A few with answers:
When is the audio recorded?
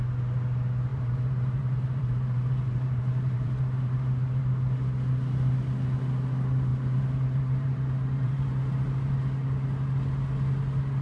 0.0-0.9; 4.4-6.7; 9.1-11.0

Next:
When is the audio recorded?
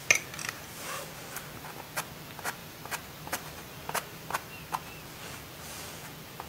0.0-0.4; 1.0-2.6; 5.0-6.5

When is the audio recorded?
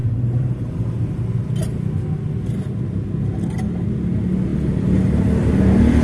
0.7-6.0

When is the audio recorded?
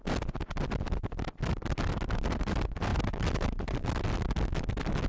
0.0-2.9; 3.9-5.1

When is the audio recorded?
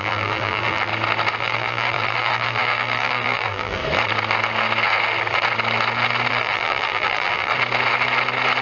0.9-1.4; 3.8-6.3; 7.5-8.6